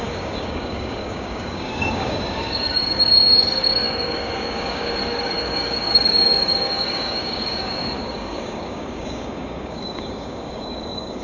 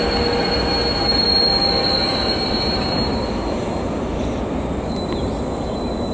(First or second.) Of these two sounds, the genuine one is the second